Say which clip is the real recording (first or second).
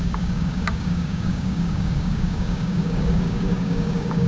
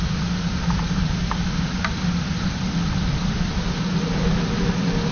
second